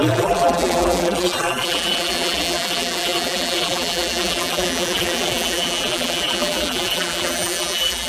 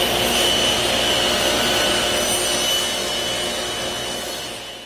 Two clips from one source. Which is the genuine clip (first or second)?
second